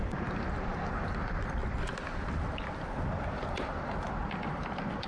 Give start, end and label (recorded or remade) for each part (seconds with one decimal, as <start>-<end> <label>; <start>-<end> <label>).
0.0-1.6 remade; 1.6-2.5 recorded; 2.5-5.1 remade